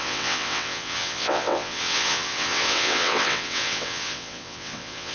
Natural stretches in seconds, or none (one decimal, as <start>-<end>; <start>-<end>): none